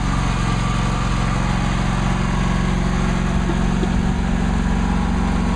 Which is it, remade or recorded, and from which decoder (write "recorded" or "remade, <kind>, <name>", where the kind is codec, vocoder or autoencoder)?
recorded